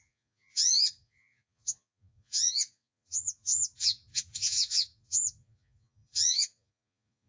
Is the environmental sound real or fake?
fake